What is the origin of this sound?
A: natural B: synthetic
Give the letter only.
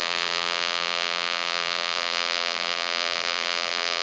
B